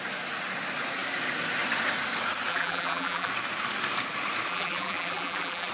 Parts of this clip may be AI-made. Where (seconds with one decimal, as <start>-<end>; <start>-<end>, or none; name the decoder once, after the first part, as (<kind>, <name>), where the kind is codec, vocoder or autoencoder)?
2.5-3.3 (vocoder, BigVGAN v2); 4.5-5.7